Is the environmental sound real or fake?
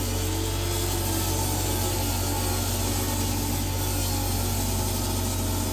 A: real